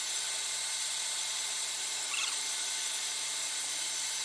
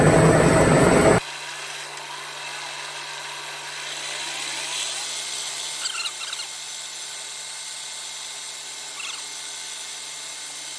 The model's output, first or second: first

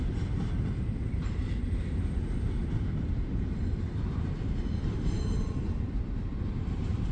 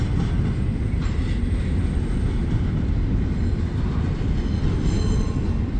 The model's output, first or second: first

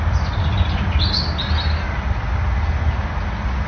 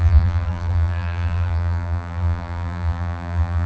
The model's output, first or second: second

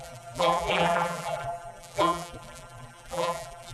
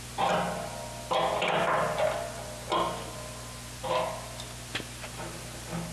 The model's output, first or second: first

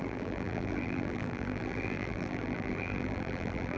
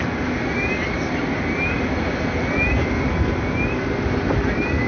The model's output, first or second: first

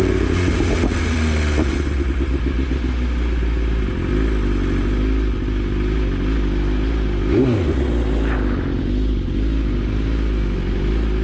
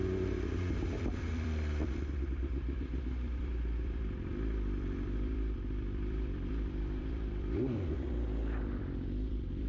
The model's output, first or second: second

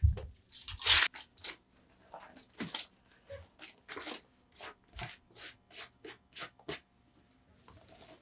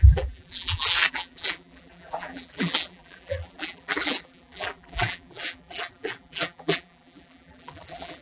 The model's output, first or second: second